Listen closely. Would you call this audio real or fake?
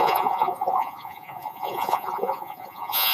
fake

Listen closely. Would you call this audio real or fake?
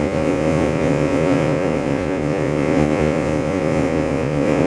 fake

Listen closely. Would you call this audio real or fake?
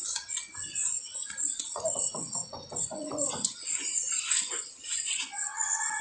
fake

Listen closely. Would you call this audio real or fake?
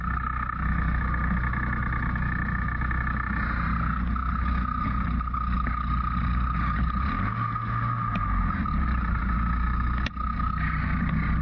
real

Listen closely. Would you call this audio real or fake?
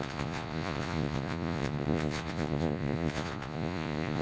fake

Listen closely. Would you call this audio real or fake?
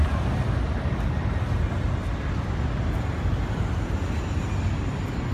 real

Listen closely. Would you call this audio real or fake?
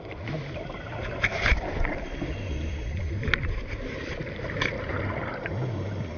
real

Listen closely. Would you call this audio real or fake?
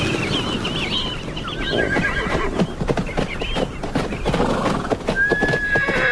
real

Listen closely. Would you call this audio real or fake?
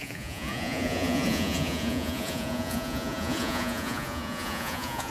fake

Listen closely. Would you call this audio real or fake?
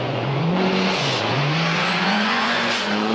fake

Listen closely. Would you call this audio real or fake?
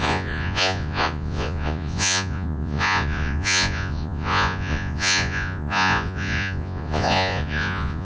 fake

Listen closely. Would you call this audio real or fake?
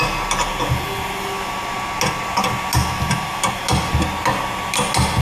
real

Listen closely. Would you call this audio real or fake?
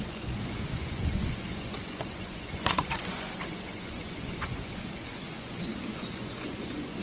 fake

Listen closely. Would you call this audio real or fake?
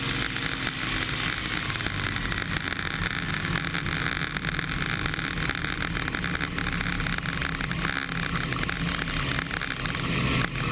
real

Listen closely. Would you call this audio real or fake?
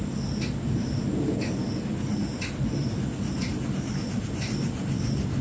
real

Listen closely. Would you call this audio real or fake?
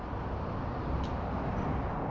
real